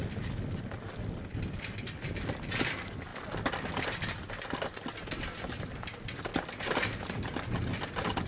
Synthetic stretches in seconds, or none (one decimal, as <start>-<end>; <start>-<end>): none